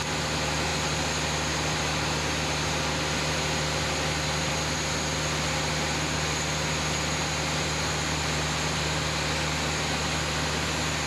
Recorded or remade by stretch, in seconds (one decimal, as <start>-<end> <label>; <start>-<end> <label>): 0.0-11.1 recorded